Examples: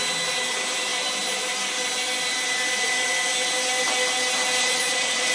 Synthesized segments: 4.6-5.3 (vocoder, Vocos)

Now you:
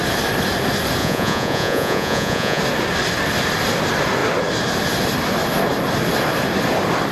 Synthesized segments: 1.0-2.6 (vocoder, Vocos)

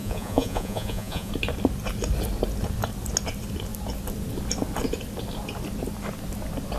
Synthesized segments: 0.0-1.3 (vocoder, Vocos)

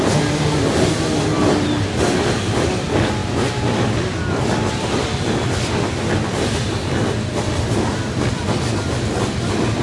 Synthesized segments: none

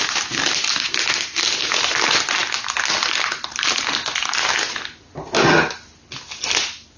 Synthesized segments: none